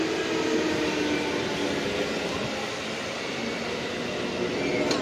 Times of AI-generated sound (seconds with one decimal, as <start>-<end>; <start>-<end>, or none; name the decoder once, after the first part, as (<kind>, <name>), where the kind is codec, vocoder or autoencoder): none